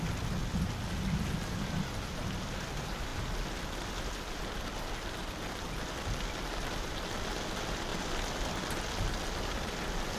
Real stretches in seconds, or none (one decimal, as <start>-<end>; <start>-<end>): 0.0-10.2